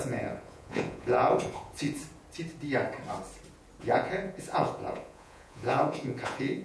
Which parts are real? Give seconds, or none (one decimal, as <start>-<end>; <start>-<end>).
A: 2.0-3.8